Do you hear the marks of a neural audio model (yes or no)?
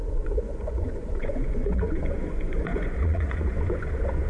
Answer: yes